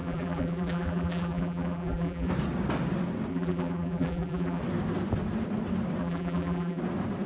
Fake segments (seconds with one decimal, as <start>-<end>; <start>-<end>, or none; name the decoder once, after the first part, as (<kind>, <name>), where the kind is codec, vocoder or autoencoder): 0.0-2.3 (vocoder, BigVGAN v2); 3.3-4.6; 6.0-6.8